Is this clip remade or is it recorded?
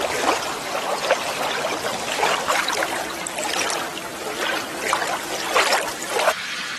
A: recorded